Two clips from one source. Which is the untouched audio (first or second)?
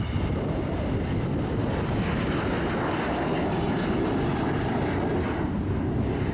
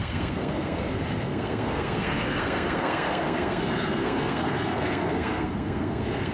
first